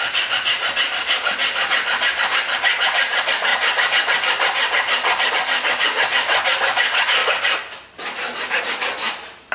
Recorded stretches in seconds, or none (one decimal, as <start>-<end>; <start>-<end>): 0.0-9.5